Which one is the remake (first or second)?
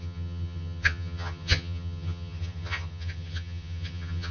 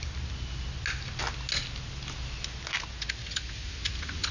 first